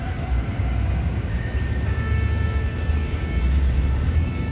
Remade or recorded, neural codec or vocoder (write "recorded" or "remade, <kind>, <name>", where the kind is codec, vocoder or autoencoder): remade, codec, DAC